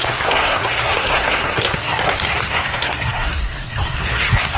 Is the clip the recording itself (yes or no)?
no